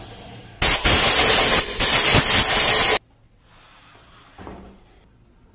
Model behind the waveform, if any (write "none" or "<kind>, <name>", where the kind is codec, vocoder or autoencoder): none